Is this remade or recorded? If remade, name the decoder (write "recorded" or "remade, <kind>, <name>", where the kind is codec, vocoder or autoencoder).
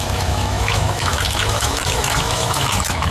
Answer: remade, autoencoder, DAC-VAE